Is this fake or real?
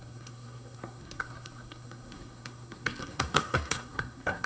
fake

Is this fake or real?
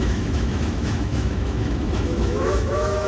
fake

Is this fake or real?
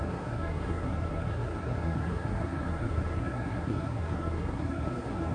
fake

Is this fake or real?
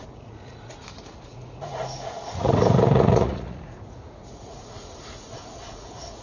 fake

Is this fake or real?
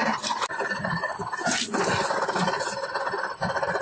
real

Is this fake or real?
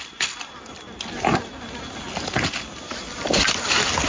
real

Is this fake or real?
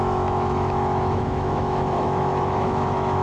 fake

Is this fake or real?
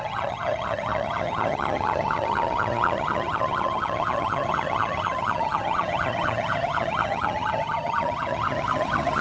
fake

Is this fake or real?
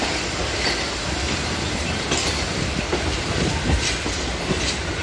real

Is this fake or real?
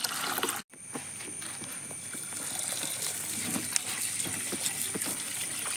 real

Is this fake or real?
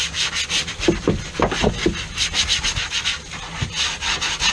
real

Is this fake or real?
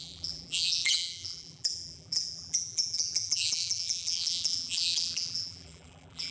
fake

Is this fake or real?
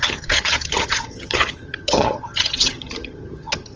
fake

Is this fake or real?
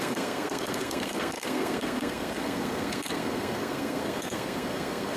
fake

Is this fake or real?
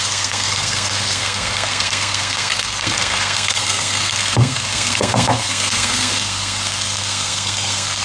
fake